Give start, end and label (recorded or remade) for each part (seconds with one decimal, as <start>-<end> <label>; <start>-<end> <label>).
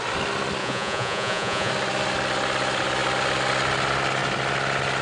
0.0-0.6 recorded; 0.6-1.7 remade; 1.7-5.0 recorded